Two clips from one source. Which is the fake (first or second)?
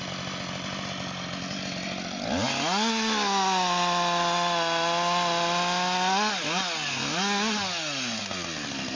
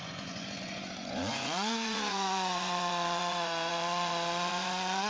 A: second